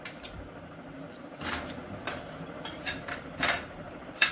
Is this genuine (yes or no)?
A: no